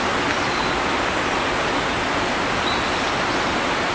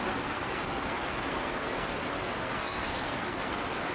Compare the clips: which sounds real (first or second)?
first